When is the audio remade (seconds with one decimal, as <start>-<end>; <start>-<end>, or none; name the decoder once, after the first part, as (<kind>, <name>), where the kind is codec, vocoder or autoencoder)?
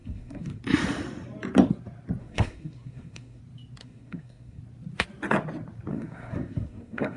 0.0-0.6 (codec, SNAC); 2.2-3.4; 3.8-4.6; 5.9-7.2